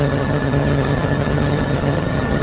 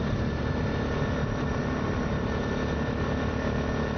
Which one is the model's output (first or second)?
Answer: first